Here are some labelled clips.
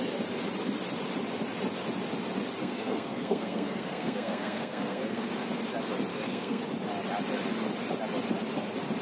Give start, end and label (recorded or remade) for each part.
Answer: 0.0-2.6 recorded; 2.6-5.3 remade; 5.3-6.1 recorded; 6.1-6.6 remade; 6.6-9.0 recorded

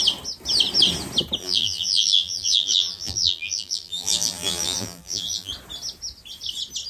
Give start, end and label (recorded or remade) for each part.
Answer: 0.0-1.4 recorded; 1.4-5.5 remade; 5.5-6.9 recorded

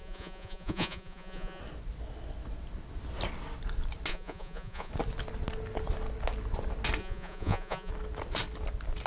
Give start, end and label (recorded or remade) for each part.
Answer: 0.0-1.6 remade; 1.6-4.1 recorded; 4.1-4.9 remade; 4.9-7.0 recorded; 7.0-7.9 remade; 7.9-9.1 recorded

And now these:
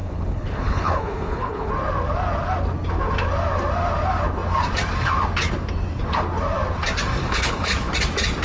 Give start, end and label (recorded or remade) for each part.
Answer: 0.0-1.7 remade; 1.7-7.2 recorded; 7.2-7.7 remade; 7.7-8.4 recorded